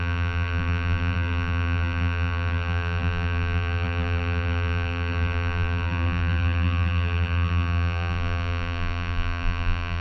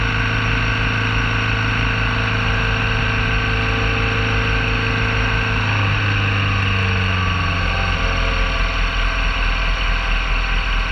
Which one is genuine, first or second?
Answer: second